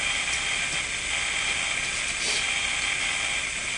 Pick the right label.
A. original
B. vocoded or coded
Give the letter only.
A